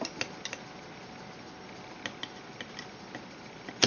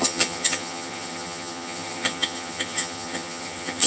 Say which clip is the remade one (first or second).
second